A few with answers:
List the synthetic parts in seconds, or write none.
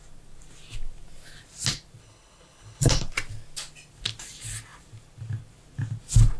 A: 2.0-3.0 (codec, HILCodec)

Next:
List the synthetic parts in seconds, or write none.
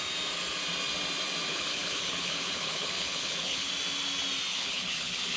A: 1.5-3.7 (codec, HILCodec); 4.5-5.4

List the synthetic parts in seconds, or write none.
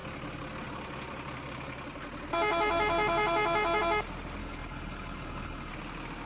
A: 4.4-5.7 (codec, HILCodec)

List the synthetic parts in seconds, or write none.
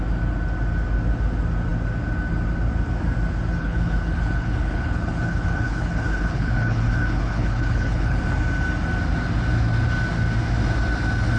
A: 3.6-8.2 (codec, HILCodec)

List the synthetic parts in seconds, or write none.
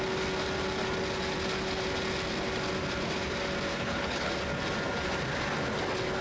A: 3.7-4.3 (codec, HILCodec)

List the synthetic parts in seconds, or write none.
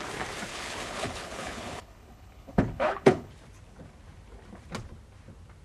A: 0.5-3.3 (codec, HILCodec)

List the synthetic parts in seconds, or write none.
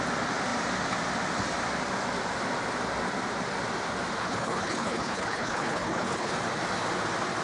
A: 4.2-6.4 (codec, HILCodec)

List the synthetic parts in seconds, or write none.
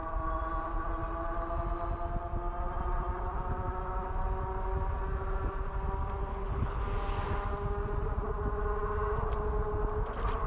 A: 6.3-6.8 (codec, HILCodec)